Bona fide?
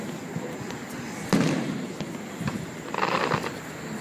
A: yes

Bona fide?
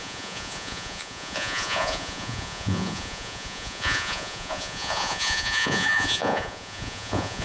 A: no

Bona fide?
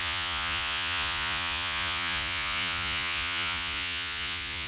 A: no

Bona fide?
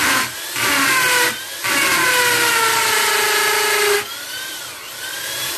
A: yes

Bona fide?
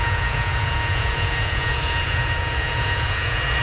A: no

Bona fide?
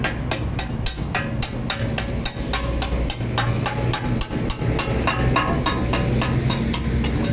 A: yes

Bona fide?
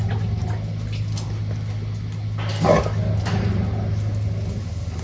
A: yes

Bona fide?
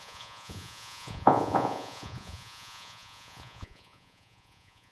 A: no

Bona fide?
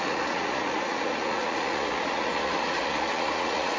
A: no